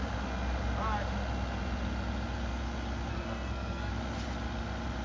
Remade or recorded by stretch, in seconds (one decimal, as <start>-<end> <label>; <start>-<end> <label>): 0.0-3.1 recorded; 3.1-3.9 remade; 3.9-5.0 recorded